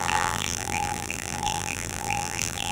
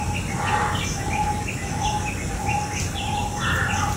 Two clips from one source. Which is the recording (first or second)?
second